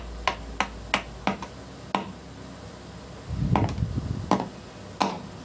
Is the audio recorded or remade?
recorded